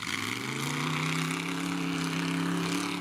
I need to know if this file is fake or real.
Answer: real